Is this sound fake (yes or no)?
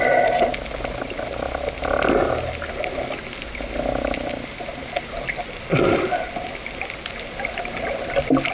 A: no